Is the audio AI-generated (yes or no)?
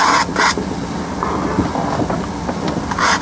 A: no